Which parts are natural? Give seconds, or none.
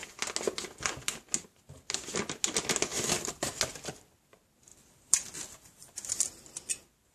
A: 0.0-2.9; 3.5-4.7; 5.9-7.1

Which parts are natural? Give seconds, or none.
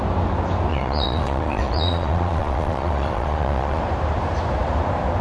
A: 0.0-0.7; 3.8-5.2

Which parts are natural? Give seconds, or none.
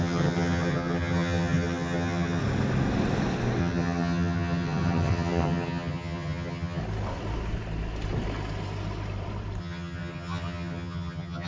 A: 2.4-3.6; 6.8-9.6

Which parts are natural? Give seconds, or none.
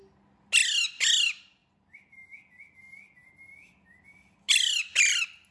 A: 0.0-5.5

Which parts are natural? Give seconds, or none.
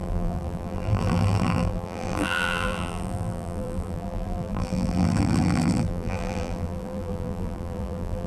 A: none